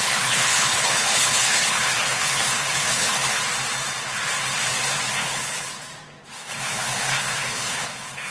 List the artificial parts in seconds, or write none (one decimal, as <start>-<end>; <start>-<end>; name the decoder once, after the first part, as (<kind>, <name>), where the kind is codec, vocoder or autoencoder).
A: 0.0-3.4 (codec, HILCodec); 5.1-5.7; 6.3-8.3

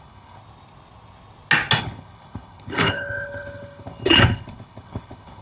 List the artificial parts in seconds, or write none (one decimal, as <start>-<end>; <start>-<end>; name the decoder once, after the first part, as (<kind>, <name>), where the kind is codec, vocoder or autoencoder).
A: 0.0-0.4 (codec, HILCodec); 1.8-5.4

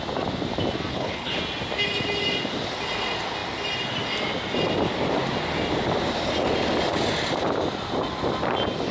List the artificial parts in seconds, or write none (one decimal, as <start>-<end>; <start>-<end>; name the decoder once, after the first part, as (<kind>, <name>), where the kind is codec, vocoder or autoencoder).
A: 0.9-1.4 (codec, HILCodec)

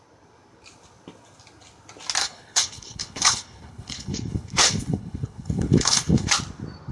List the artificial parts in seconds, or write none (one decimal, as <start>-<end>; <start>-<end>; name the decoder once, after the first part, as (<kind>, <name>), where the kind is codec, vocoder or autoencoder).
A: 2.2-6.3 (codec, HILCodec)

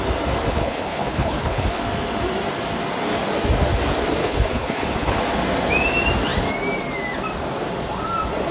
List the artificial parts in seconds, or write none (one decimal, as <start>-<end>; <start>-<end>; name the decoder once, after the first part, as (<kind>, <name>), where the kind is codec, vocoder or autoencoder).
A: 0.5-1.8 (codec, HILCodec); 4.2-5.2

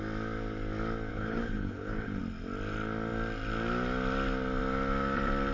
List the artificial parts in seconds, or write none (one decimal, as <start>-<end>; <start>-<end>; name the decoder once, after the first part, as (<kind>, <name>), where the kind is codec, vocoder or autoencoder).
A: 1.1-2.2 (codec, HILCodec)

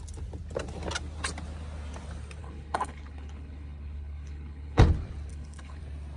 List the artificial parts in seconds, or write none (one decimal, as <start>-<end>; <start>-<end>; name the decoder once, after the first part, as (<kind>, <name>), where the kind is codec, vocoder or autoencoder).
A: 2.4-4.8 (codec, HILCodec); 5.3-5.8